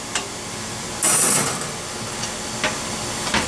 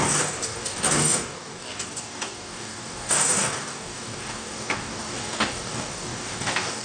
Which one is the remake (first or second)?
second